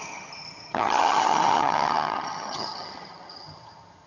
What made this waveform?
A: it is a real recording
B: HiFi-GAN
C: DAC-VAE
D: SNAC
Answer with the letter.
B